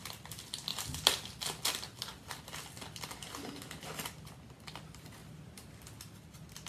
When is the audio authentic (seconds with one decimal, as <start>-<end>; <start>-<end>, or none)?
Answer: 0.0-6.7